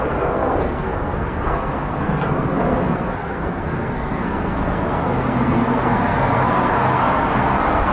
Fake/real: fake